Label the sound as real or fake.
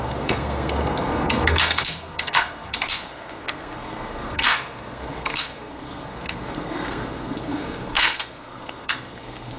fake